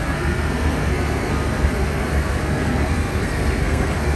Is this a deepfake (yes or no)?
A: yes